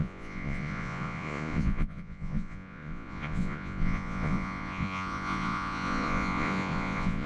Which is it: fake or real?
fake